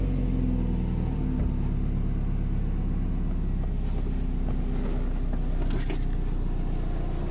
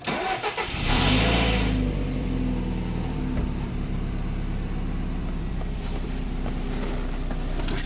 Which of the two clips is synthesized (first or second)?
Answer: second